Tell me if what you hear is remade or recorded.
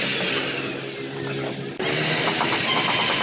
recorded